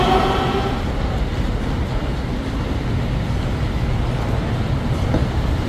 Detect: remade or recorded recorded